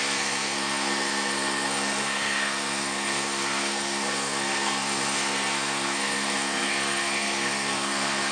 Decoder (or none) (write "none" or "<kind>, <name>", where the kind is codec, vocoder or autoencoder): codec, SNAC